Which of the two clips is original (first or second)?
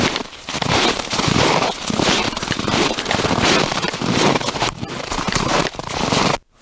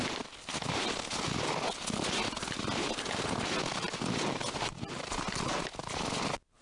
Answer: second